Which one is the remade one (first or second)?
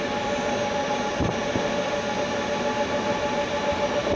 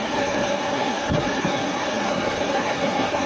second